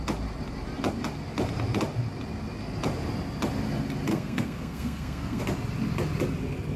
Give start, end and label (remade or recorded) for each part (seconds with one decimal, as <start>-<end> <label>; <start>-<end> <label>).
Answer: 0.0-4.1 recorded; 4.1-5.4 remade; 5.4-6.8 recorded